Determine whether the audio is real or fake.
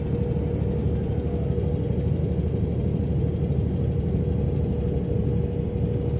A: real